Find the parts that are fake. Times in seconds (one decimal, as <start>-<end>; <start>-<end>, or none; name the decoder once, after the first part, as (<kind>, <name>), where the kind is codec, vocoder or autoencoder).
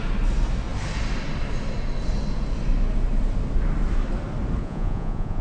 4.6-5.4 (vocoder, Vocos)